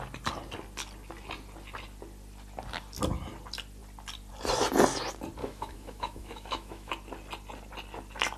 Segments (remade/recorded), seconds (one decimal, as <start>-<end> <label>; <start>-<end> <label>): 0.0-5.4 recorded; 5.4-6.9 remade; 6.9-8.4 recorded